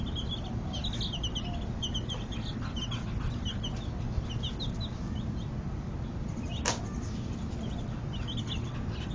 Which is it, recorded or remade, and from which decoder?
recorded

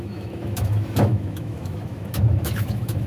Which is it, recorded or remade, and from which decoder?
remade, autoencoder, DAC-VAE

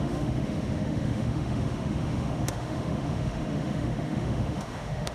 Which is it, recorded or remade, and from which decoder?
remade, autoencoder, DAC-VAE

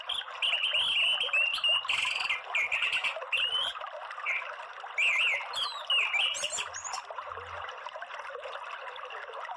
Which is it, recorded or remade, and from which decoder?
recorded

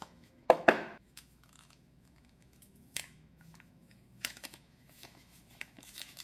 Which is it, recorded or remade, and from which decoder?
remade, autoencoder, DAC-VAE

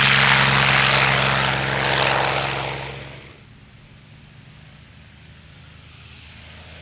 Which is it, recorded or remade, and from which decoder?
recorded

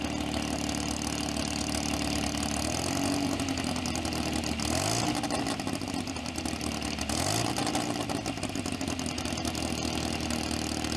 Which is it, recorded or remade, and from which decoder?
recorded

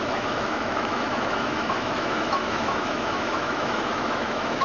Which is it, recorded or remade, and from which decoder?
remade, autoencoder, DAC-VAE